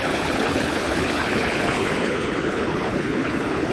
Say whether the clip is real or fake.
fake